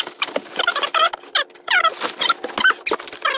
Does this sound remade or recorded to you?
recorded